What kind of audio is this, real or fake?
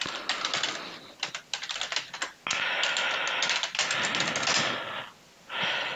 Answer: real